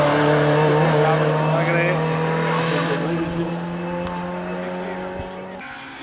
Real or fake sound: real